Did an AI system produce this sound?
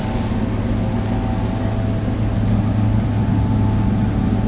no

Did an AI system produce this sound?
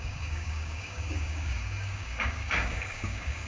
yes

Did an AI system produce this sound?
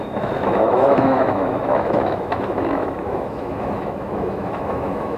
yes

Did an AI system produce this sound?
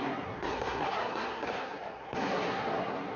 yes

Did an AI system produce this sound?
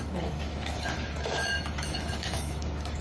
yes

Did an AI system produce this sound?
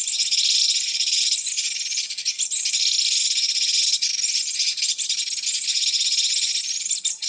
no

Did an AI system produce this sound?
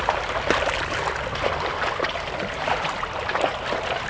no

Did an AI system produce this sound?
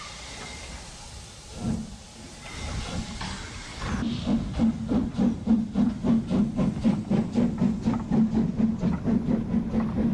no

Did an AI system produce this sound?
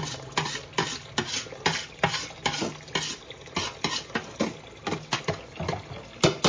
no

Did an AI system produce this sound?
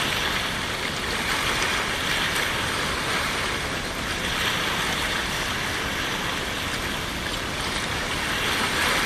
no